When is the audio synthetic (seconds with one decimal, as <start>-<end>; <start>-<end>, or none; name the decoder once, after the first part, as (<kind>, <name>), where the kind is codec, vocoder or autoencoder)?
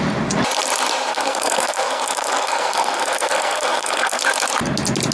1.1-4.2 (codec, SNAC)